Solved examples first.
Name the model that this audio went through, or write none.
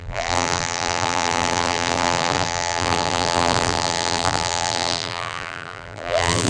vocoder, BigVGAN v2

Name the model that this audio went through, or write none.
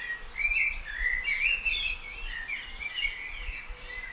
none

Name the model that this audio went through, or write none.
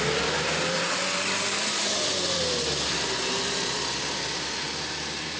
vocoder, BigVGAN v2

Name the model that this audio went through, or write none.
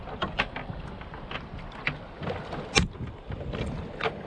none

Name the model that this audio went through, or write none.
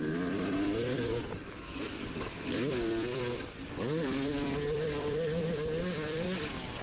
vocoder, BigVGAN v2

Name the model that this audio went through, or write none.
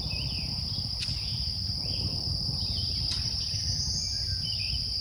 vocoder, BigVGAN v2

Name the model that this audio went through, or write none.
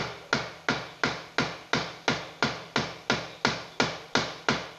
none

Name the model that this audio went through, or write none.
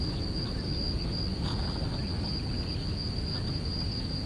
none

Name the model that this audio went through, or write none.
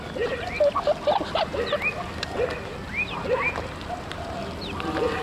none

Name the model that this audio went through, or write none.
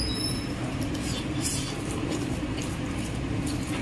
vocoder, BigVGAN v2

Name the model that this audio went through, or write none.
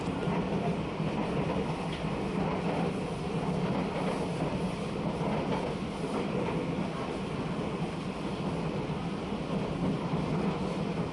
none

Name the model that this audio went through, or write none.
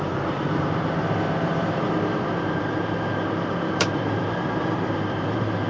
vocoder, BigVGAN v2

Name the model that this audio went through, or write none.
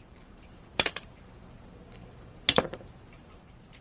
vocoder, BigVGAN v2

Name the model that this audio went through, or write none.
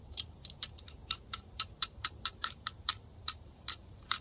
vocoder, BigVGAN v2